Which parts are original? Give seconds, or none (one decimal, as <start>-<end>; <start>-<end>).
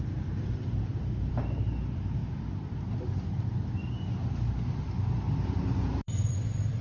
0.0-0.9; 1.4-2.2; 2.9-5.3